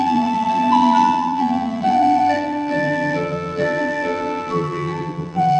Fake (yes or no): yes